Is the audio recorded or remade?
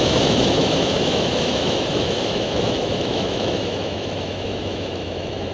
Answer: remade